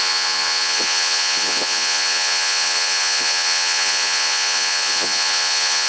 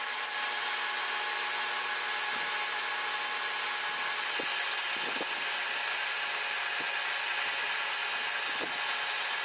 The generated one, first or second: first